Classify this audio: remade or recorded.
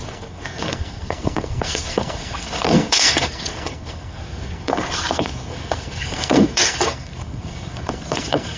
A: remade